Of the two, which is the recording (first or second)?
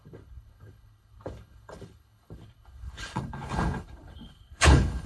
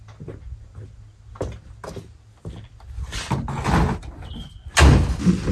second